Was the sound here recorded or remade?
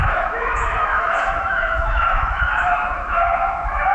remade